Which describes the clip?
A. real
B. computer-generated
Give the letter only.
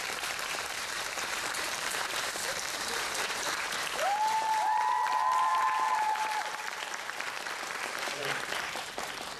B